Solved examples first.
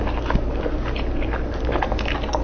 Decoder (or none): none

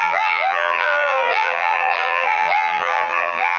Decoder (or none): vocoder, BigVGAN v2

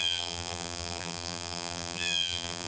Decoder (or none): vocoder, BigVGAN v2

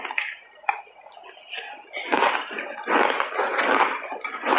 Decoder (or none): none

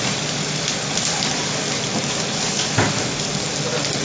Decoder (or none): none